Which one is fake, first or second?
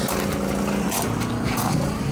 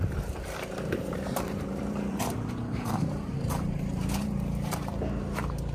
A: second